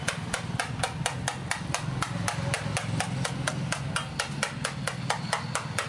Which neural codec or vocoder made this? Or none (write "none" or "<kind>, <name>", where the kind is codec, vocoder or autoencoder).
none